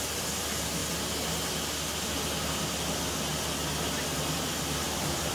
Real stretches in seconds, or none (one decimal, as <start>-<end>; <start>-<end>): 0.8-4.0

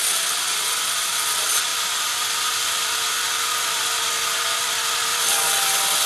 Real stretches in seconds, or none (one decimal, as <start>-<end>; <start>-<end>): 0.0-1.7; 4.0-5.1

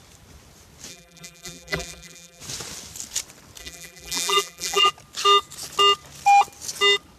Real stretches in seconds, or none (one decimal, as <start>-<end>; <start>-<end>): 0.0-0.9; 2.4-3.6; 4.9-7.2